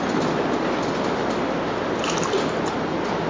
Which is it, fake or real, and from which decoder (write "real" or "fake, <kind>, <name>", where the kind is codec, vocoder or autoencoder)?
real